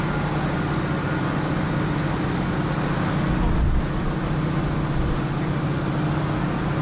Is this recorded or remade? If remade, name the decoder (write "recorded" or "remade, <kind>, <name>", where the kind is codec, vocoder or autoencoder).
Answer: recorded